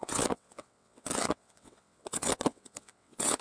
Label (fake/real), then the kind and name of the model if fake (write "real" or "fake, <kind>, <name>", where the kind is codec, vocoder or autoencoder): fake, vocoder, WaveNeXt